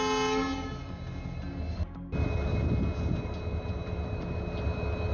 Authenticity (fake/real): real